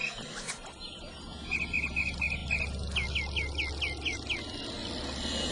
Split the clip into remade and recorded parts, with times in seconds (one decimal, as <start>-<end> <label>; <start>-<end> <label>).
0.0-5.5 recorded